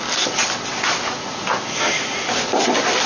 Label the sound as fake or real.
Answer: real